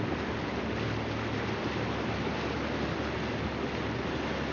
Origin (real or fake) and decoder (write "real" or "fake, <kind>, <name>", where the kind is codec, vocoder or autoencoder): real